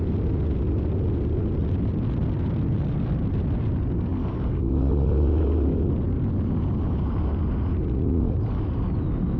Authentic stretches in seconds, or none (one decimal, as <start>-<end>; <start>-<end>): 0.0-9.4